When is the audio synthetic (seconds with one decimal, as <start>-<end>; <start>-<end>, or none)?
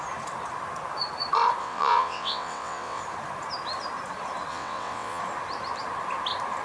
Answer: 1.6-3.0; 4.5-5.2